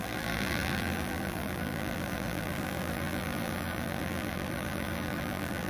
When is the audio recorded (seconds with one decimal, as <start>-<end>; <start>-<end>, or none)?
none